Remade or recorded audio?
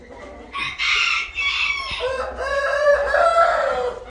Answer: recorded